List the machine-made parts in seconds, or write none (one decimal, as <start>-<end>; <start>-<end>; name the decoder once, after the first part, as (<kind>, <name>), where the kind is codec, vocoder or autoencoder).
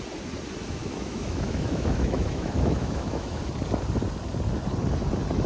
0.8-3.4 (autoencoder, DAC-VAE)